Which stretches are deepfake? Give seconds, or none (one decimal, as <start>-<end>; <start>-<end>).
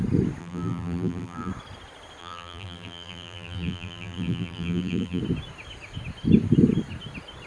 0.4-1.5; 2.2-5.2